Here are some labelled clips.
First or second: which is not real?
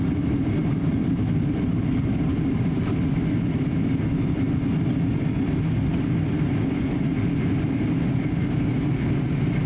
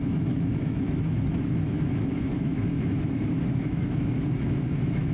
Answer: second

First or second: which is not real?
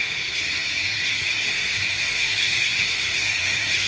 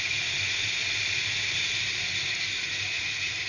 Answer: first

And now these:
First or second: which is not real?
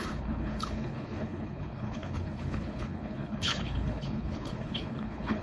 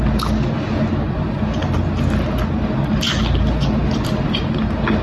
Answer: first